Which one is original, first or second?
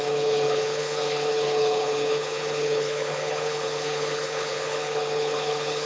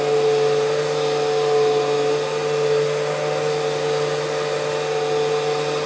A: second